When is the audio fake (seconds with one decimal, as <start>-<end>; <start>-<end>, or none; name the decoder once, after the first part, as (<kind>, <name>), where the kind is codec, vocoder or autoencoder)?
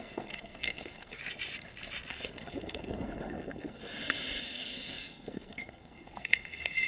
0.0-1.2 (codec, SNAC); 2.1-3.8; 4.4-6.9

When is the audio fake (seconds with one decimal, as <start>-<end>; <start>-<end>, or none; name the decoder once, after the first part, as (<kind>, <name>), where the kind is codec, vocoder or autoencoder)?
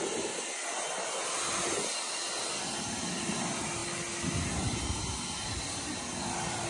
none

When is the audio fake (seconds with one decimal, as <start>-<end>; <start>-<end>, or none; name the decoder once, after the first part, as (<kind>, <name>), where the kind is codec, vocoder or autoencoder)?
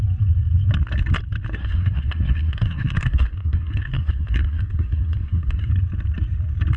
1.6-5.7 (codec, SNAC)